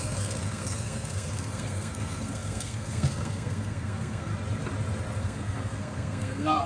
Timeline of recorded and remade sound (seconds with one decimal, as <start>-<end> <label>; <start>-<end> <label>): 0.0-4.3 remade; 4.3-5.2 recorded; 5.2-6.7 remade